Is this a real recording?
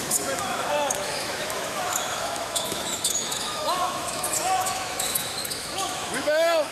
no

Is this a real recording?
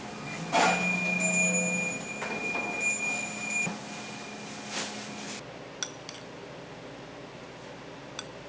yes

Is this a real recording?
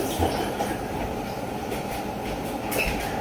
no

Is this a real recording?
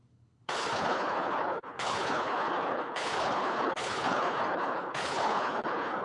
no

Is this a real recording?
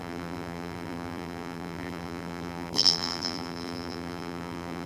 no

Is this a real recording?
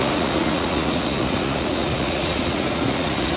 no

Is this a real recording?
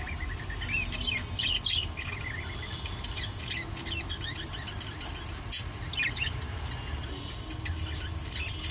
yes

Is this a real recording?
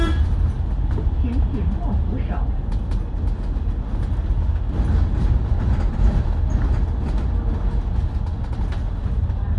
yes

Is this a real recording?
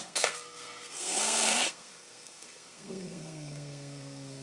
no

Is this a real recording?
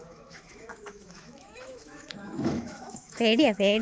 no